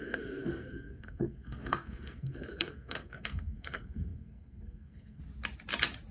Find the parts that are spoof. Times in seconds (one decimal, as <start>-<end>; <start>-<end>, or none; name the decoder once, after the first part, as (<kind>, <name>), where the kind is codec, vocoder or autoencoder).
0.0-5.2 (codec, SNAC)